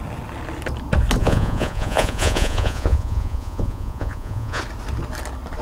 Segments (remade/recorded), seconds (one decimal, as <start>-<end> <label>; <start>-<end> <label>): 0.0-1.2 recorded; 1.2-4.6 remade; 4.6-5.6 recorded